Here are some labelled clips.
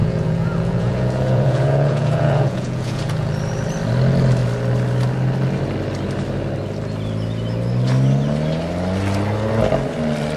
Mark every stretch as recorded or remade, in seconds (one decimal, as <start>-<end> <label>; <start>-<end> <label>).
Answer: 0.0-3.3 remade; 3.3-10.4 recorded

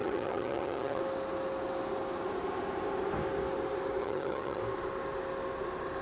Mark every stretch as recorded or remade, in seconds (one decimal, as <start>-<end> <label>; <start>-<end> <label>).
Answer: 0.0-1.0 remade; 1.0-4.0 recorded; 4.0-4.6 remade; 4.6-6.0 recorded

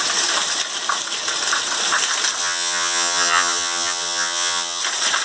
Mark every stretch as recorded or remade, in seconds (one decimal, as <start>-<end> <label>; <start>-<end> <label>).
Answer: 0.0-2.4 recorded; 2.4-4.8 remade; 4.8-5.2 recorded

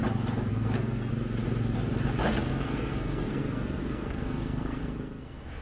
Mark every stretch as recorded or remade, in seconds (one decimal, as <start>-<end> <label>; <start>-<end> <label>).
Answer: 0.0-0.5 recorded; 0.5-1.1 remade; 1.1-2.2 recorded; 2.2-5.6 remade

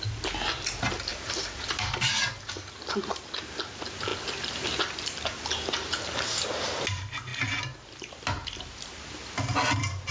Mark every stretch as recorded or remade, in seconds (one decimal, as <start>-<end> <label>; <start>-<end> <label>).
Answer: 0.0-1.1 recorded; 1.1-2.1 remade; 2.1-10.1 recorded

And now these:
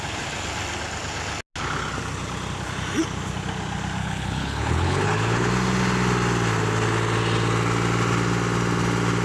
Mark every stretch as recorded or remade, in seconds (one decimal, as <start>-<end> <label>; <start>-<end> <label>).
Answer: 0.0-4.0 recorded; 4.0-5.5 remade; 5.5-9.2 recorded

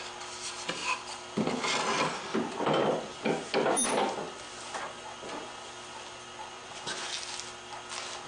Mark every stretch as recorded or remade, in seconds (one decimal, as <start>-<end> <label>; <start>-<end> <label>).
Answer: 0.0-6.4 recorded; 6.4-7.1 remade; 7.1-8.3 recorded